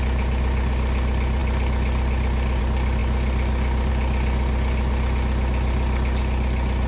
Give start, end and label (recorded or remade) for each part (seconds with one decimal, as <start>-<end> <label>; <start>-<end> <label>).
0.0-6.9 recorded